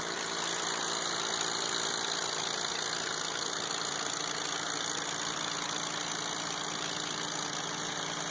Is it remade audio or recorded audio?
recorded